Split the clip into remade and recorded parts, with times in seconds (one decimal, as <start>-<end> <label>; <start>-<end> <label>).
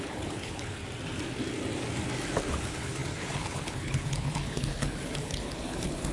0.0-0.8 remade; 0.8-2.5 recorded; 2.5-6.1 remade